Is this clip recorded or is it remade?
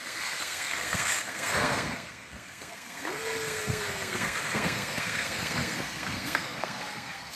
remade